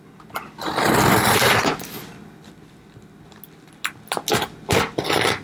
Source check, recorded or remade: recorded